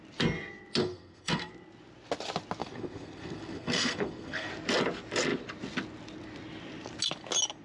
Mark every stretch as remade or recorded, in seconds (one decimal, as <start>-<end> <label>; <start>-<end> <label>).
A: 0.0-0.8 recorded; 0.8-1.5 remade; 1.5-2.6 recorded; 2.6-4.5 remade; 4.5-7.6 recorded